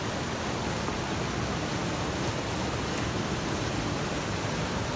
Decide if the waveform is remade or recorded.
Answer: recorded